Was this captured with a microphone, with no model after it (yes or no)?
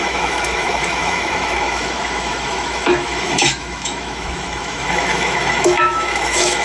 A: no